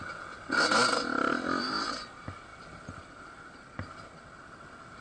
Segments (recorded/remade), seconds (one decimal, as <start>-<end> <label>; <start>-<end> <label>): 0.0-1.3 remade; 1.3-2.5 recorded; 2.5-3.1 remade; 3.1-5.0 recorded